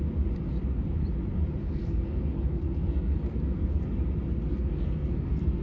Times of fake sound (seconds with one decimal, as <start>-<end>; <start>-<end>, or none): 1.6-3.8; 4.5-5.6